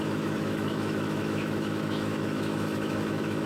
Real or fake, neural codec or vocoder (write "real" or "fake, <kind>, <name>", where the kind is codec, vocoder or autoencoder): fake, autoencoder, DAC-VAE